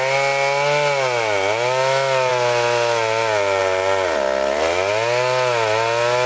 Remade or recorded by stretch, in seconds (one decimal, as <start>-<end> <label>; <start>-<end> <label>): 0.0-6.3 recorded